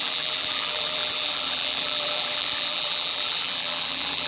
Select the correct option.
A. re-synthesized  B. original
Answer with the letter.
A